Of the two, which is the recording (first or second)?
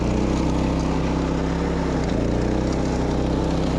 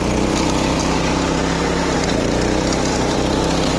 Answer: first